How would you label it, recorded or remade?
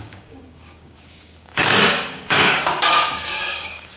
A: remade